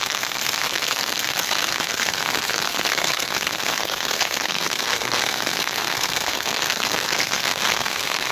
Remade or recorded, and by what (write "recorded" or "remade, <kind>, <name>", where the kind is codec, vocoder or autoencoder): remade, codec, SNAC